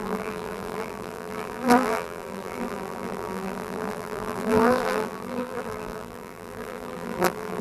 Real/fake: fake